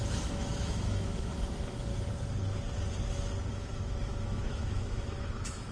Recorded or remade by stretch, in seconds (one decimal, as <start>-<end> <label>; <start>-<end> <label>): 0.0-1.9 remade; 1.9-3.5 recorded; 3.5-5.7 remade